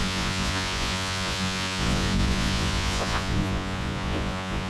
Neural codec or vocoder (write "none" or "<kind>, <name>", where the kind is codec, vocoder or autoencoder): vocoder, Vocos